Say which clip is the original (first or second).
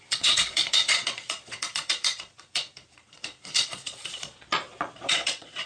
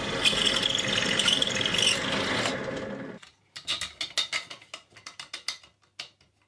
second